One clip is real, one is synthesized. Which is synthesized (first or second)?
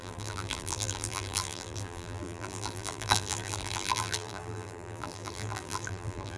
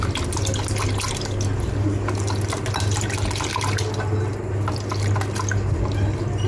first